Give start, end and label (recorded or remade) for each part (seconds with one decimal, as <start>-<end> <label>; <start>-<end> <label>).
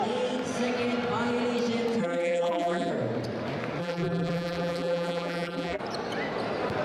0.0-2.0 recorded; 2.0-2.9 remade; 2.9-3.8 recorded; 3.8-5.8 remade; 5.8-6.8 recorded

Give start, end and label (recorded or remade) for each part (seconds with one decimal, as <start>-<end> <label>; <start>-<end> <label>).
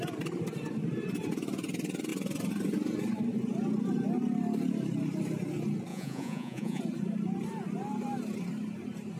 0.0-5.9 recorded; 5.9-6.8 remade; 6.8-9.2 recorded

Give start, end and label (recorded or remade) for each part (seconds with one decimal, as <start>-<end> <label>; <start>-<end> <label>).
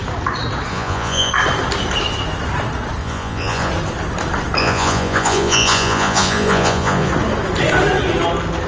0.0-0.7 recorded; 0.7-1.3 remade; 1.3-3.0 recorded; 3.0-3.7 remade; 3.7-4.6 recorded; 4.6-7.1 remade; 7.1-8.7 recorded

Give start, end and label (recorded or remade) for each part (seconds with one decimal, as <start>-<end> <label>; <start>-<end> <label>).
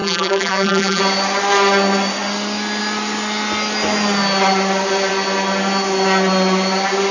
0.0-1.0 remade; 1.0-7.1 recorded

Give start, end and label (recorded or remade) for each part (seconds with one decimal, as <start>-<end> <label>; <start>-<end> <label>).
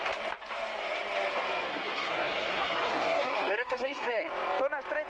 0.0-1.7 recorded; 1.7-4.3 remade; 4.3-5.1 recorded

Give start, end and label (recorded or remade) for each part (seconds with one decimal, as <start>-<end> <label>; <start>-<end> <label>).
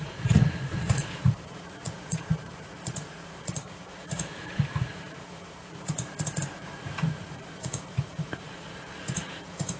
0.0-9.8 remade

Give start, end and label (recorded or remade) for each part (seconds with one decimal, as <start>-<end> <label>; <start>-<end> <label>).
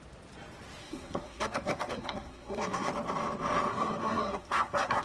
0.0-0.8 recorded; 0.8-2.9 remade; 2.9-3.7 recorded; 3.7-5.0 remade